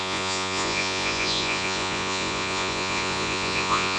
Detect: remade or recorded remade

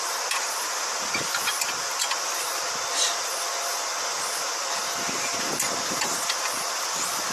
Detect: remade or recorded recorded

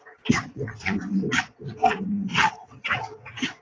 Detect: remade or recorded remade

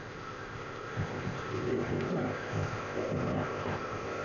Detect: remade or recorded remade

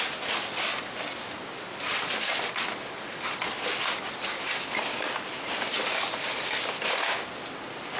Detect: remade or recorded recorded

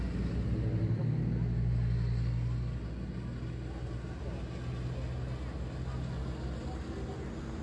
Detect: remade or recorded recorded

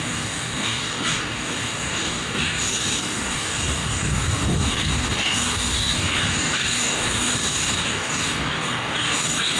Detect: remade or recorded remade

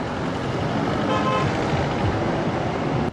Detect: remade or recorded recorded